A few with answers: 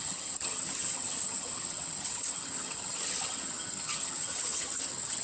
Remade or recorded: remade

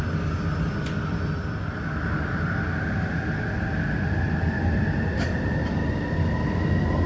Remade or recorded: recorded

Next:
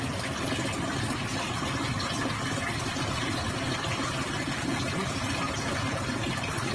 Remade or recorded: recorded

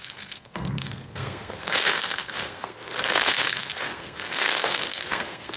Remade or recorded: remade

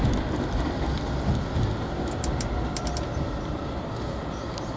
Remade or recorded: recorded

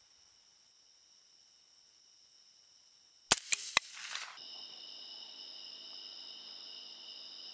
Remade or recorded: recorded